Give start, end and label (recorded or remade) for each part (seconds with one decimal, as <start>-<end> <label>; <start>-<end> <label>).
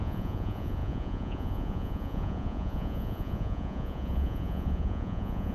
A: 0.0-5.5 remade